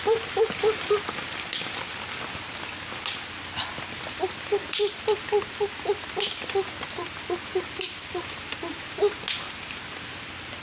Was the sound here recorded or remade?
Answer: recorded